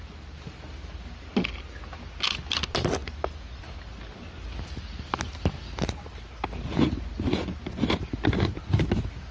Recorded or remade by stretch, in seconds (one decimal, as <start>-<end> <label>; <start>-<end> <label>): 0.0-9.3 recorded